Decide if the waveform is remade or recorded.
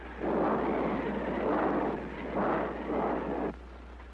recorded